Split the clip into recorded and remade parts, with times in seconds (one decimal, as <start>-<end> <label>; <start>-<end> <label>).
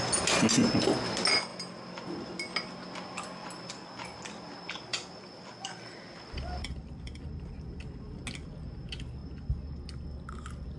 0.0-4.9 recorded; 4.9-7.6 remade; 7.6-10.8 recorded